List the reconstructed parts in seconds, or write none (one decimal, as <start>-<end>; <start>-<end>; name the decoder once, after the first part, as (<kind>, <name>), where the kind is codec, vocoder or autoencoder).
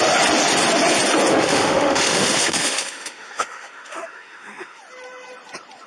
1.3-4.8 (autoencoder, DAC-VAE)